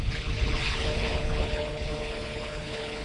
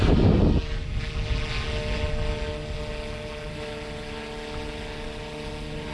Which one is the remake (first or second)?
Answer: first